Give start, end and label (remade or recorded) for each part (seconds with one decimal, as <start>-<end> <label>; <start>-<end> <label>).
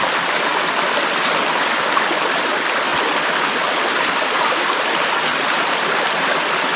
0.0-6.8 recorded